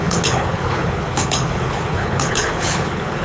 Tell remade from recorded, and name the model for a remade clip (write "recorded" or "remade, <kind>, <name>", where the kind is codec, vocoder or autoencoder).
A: remade, codec, HILCodec